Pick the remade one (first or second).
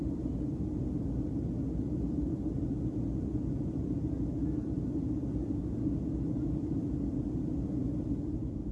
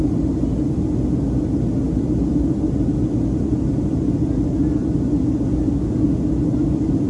first